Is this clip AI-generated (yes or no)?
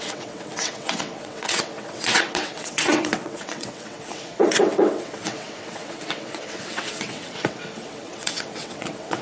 yes